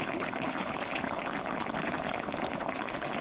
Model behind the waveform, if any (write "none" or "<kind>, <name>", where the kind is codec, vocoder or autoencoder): codec, HILCodec